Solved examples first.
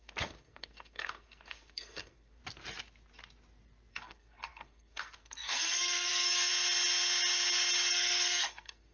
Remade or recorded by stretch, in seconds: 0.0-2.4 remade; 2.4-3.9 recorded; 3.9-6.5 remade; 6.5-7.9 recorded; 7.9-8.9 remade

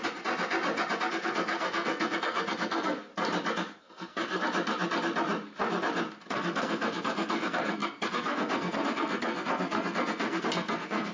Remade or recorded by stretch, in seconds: 0.0-1.1 recorded; 1.1-3.1 remade; 3.1-3.8 recorded; 3.8-4.4 remade; 4.4-6.3 recorded; 6.3-11.1 remade

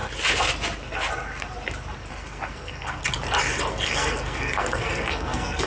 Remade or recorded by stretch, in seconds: 0.0-2.1 recorded; 2.1-3.0 remade; 3.0-3.7 recorded; 3.7-5.7 remade

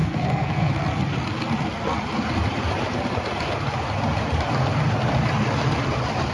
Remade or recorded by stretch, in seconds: 0.0-0.7 remade; 0.7-6.3 recorded

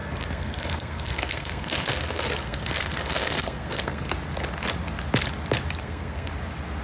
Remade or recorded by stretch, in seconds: 0.0-4.1 remade; 4.1-5.8 recorded; 5.8-6.3 remade; 6.3-6.8 recorded